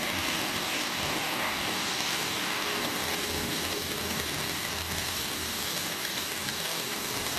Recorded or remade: remade